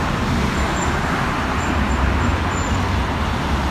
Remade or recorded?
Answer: recorded